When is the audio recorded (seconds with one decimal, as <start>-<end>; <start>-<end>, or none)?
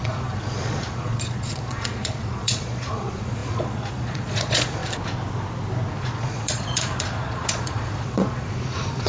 4.8-6.0